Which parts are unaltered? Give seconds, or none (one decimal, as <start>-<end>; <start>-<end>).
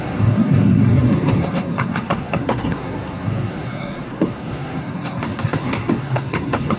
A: none